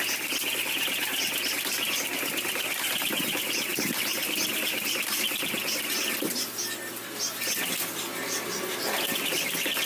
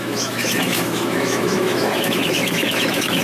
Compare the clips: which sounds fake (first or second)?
second